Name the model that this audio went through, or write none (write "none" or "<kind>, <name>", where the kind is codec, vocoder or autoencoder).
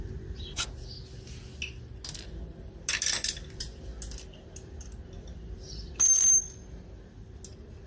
none